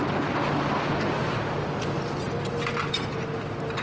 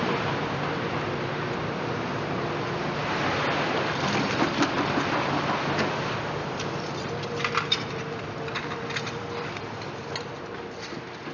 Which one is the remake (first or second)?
second